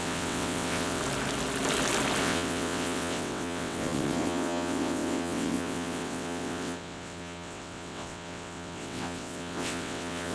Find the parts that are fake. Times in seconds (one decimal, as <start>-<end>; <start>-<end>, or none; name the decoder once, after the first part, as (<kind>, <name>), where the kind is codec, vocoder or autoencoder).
0.0-1.0 (vocoder, WaveNeXt); 2.2-10.3